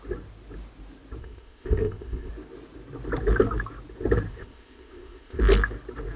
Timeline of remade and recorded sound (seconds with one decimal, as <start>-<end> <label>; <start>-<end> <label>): 0.0-1.2 recorded; 1.2-2.3 remade; 2.3-4.3 recorded; 4.3-5.4 remade; 5.4-6.2 recorded